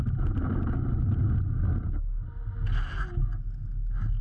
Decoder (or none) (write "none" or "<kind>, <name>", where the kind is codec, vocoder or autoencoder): none